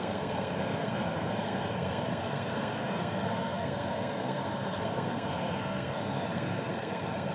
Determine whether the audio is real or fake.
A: fake